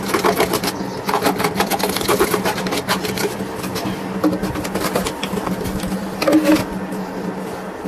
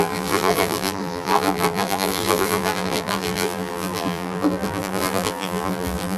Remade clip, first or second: second